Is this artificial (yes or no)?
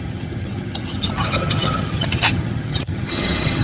yes